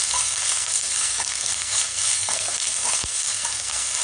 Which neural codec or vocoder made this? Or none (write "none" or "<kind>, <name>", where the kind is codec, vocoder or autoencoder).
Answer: codec, SNAC